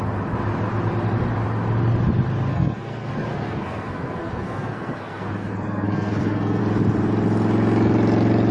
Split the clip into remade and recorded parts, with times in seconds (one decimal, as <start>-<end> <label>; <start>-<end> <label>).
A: 0.0-2.5 recorded; 2.5-6.6 remade; 6.6-8.5 recorded